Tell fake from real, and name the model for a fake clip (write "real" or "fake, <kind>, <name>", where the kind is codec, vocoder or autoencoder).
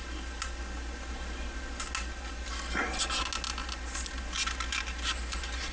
real